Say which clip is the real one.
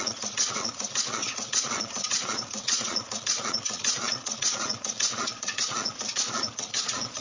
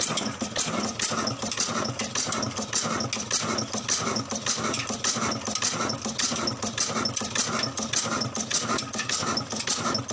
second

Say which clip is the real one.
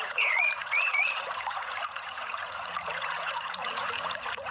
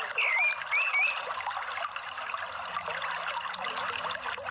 second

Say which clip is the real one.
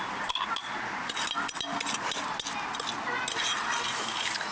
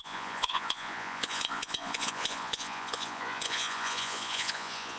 first